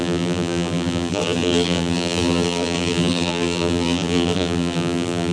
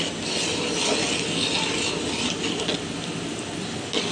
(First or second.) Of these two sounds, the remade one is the first